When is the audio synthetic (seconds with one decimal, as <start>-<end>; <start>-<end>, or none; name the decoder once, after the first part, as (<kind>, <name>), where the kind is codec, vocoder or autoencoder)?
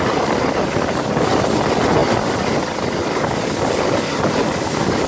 none